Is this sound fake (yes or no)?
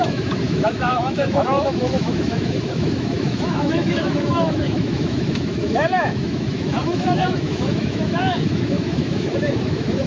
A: yes